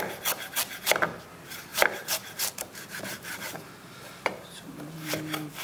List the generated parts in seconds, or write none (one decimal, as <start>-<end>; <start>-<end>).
1.7-5.1